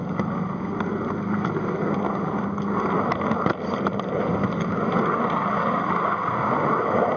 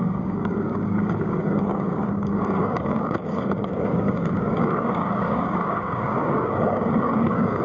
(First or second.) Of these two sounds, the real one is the first